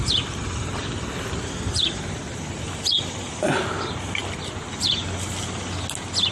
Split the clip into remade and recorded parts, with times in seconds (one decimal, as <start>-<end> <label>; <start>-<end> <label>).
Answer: 0.0-6.3 recorded